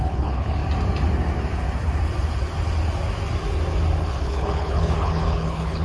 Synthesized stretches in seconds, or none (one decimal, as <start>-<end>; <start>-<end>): 0.0-0.6; 4.1-5.8